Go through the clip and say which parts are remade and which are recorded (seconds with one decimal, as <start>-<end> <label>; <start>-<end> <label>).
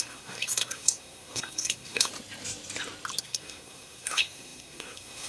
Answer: 0.0-2.1 remade; 2.1-3.2 recorded; 3.2-5.3 remade